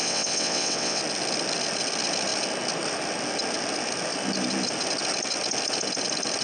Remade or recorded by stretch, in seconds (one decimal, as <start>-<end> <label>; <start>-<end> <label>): 0.0-1.0 remade; 1.0-6.4 recorded